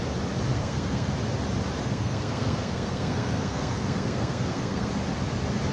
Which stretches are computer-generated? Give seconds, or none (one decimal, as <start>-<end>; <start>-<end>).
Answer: 0.5-1.1; 1.8-4.9